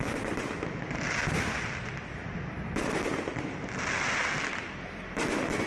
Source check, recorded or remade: recorded